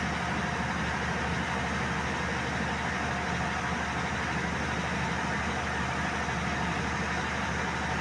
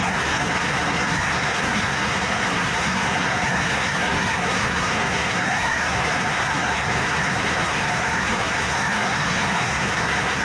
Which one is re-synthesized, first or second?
second